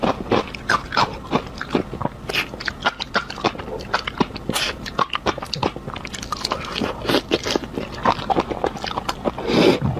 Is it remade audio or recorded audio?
recorded